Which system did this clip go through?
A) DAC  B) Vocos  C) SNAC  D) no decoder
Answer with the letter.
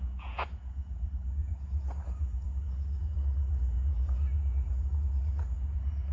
B